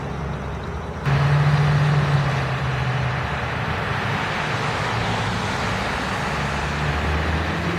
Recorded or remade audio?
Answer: recorded